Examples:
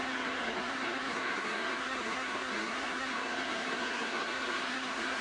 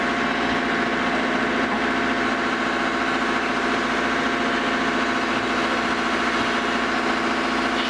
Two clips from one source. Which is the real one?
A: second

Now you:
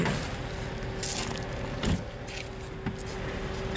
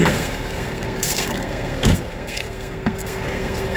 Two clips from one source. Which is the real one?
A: first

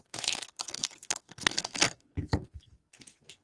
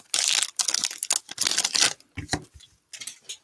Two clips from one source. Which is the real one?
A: second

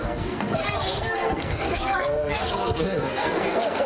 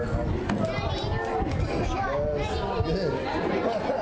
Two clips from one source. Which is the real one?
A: second